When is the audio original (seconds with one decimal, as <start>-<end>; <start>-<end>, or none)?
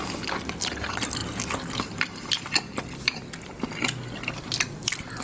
1.2-4.3